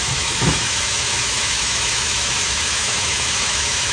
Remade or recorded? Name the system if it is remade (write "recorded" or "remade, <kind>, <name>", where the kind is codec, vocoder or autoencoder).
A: remade, autoencoder, DAC-VAE